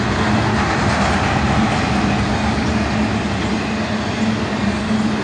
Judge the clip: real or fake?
real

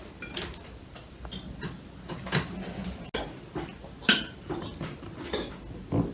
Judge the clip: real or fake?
real